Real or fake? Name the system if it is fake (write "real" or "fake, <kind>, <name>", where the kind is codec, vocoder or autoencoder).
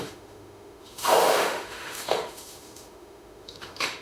fake, autoencoder, DAC-VAE